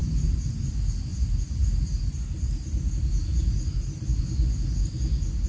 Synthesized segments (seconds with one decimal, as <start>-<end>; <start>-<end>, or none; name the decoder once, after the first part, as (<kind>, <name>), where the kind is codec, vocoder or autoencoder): 0.0-0.7 (vocoder, BigVGAN v2); 1.1-4.2